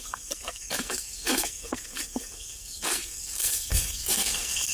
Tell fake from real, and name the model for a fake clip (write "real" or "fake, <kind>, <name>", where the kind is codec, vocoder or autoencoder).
fake, codec, SNAC